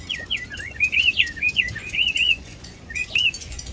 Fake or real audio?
fake